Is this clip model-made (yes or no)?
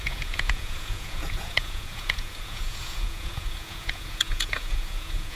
yes